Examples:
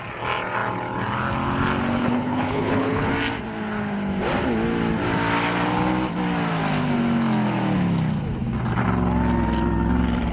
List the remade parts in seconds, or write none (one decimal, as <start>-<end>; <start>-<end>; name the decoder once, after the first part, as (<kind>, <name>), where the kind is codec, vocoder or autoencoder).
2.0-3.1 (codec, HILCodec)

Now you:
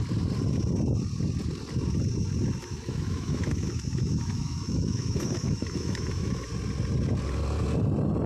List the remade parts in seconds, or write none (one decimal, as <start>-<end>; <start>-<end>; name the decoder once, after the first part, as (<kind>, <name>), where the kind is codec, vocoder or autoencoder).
2.6-6.5 (autoencoder, DAC-VAE)

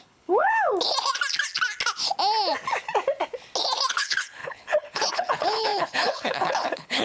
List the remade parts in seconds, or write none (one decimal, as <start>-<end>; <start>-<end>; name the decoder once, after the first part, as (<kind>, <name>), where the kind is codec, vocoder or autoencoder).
0.0-0.5 (codec, HILCodec); 3.9-7.0

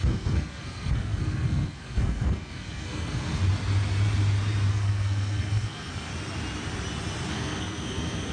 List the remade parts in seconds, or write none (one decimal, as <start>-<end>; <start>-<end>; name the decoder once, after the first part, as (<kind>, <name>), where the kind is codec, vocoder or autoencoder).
0.0-3.4 (codec, SNAC); 4.7-6.1; 7.3-8.3

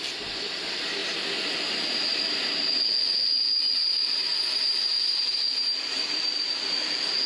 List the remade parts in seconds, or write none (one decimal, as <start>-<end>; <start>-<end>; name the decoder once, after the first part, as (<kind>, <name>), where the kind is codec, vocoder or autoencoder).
none